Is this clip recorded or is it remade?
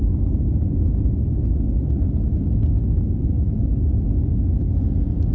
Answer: recorded